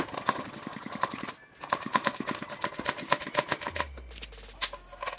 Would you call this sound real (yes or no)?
yes